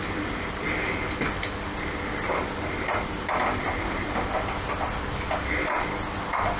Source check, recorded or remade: recorded